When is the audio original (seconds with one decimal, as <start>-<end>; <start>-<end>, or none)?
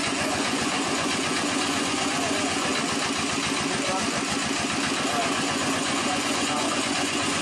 2.7-5.2